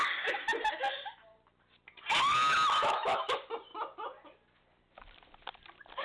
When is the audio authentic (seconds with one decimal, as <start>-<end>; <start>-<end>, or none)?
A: 0.0-2.8; 3.3-6.0